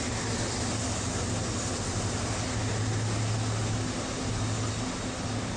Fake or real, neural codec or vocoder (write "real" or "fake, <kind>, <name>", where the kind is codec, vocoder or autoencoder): real